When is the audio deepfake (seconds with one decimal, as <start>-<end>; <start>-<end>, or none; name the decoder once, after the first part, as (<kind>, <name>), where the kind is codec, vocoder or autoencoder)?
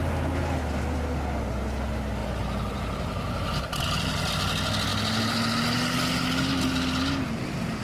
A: 2.2-4.3 (vocoder, BigVGAN v2)